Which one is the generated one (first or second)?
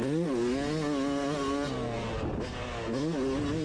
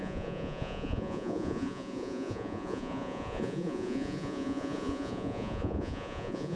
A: second